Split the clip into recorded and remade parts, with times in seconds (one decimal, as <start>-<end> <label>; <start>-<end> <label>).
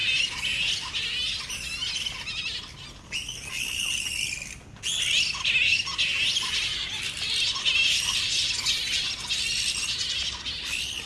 0.0-11.1 recorded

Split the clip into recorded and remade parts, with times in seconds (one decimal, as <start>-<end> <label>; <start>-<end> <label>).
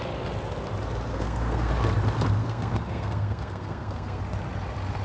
0.0-1.1 recorded; 1.1-1.7 remade; 1.7-2.4 recorded; 2.4-4.2 remade; 4.2-5.0 recorded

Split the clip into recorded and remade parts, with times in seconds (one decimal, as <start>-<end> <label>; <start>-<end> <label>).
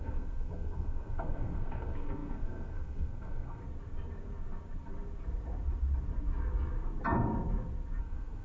0.0-3.6 remade; 3.6-8.0 recorded; 8.0-8.4 remade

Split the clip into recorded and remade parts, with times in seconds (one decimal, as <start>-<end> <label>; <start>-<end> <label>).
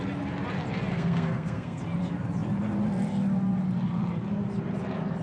0.0-0.9 recorded; 0.9-1.8 remade; 1.8-5.2 recorded